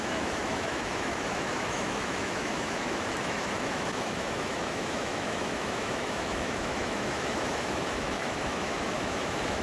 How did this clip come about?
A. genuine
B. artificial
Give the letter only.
B